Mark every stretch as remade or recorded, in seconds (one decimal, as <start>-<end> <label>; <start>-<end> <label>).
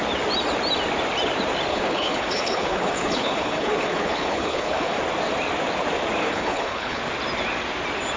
0.0-1.7 recorded; 1.7-5.0 remade; 5.0-6.2 recorded; 6.2-7.0 remade; 7.0-8.2 recorded